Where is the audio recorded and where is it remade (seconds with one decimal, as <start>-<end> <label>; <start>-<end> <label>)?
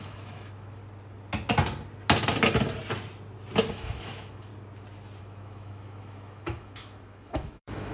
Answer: 0.0-0.8 remade; 0.8-3.7 recorded; 3.7-4.5 remade; 4.5-5.2 recorded; 5.2-7.9 remade